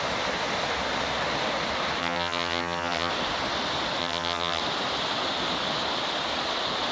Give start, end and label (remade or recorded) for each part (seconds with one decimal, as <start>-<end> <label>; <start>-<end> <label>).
0.0-2.0 recorded; 2.0-3.1 remade; 3.1-4.0 recorded; 4.0-4.6 remade; 4.6-6.9 recorded